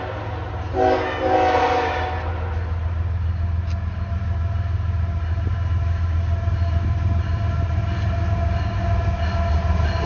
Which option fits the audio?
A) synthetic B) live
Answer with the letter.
B